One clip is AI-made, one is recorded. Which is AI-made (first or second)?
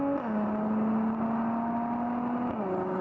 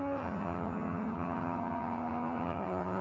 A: second